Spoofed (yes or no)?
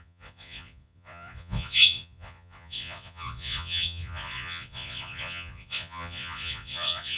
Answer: yes